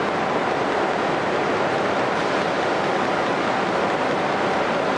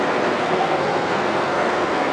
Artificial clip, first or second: second